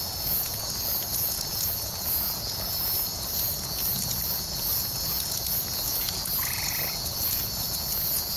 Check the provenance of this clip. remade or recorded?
remade